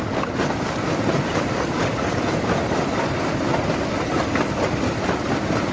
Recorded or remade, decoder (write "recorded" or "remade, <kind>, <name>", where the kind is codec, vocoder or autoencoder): recorded